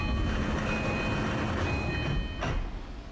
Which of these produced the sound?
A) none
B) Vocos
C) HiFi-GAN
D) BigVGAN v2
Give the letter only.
A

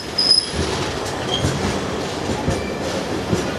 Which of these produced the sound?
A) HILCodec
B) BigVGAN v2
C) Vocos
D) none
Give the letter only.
D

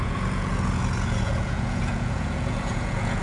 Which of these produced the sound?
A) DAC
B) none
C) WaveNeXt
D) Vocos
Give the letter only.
D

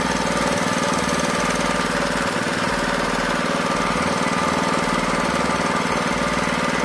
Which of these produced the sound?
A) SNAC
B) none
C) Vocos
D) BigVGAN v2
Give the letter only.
B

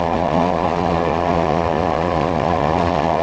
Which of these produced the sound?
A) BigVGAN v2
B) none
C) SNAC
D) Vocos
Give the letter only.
D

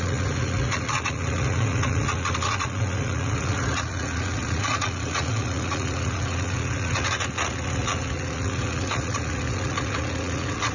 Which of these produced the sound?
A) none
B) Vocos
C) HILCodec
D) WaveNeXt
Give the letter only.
B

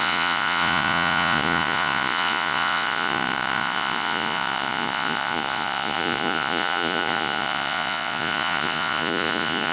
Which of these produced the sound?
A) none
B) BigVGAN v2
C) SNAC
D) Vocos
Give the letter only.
D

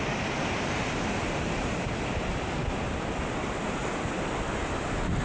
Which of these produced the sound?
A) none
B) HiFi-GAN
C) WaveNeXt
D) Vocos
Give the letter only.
A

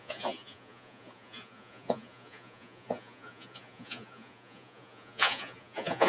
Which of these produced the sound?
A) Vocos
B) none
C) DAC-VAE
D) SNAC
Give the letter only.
A